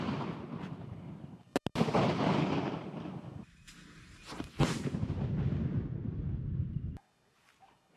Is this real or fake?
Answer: real